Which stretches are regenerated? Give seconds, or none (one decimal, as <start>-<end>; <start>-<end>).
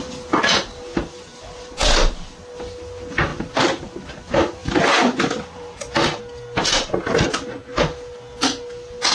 3.3-3.9; 4.6-6.2